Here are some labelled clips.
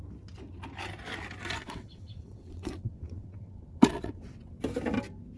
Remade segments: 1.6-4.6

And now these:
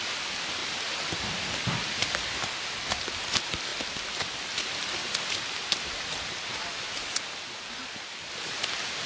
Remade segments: none

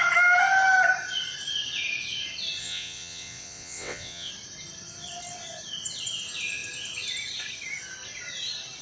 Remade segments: 2.6-4.3

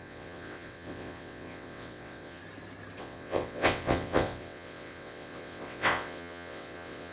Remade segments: 0.0-2.4; 3.0-7.1